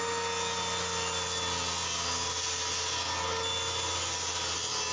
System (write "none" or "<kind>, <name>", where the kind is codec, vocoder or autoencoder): none